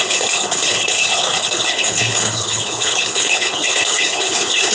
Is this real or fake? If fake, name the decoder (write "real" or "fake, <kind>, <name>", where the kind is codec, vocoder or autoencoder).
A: fake, codec, HILCodec